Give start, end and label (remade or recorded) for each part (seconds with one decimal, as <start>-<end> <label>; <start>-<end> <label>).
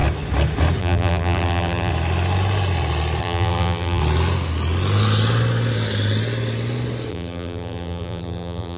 0.0-0.8 recorded; 0.8-1.9 remade; 1.9-3.2 recorded; 3.2-4.0 remade; 4.0-7.1 recorded; 7.1-8.8 remade